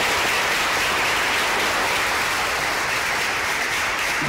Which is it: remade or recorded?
recorded